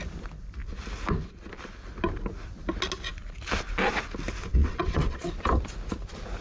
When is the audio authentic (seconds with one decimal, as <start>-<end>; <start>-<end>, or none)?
0.0-4.6; 5.3-6.4